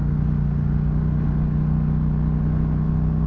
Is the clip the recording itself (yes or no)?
yes